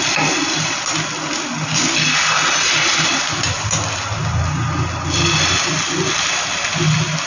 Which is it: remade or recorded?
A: recorded